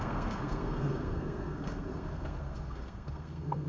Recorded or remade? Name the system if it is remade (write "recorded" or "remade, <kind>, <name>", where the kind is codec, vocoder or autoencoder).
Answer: remade, codec, SNAC